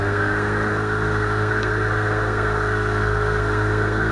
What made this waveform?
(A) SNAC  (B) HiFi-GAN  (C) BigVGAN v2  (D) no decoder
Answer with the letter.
A